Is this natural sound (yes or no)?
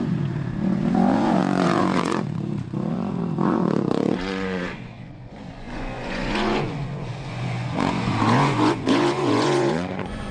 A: no